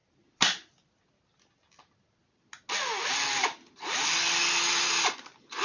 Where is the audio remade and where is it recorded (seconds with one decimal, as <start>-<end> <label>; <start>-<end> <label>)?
0.0-5.6 recorded